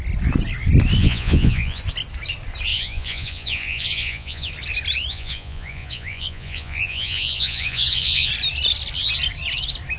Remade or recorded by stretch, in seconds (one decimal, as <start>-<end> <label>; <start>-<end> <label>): 0.0-1.0 recorded; 1.0-1.8 remade; 1.8-2.7 recorded; 2.7-4.5 remade; 4.5-5.1 recorded; 5.1-8.3 remade; 8.3-10.0 recorded